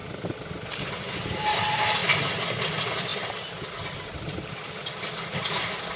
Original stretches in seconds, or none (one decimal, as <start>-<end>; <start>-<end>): 0.0-1.5; 2.0-2.6; 3.1-4.1